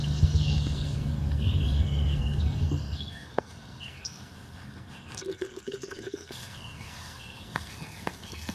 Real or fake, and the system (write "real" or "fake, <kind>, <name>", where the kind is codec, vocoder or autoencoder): fake, codec, SNAC